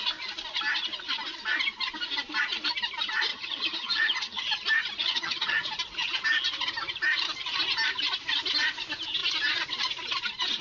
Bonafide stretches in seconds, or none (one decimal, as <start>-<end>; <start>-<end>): 0.0-3.3; 4.4-5.0; 5.6-10.6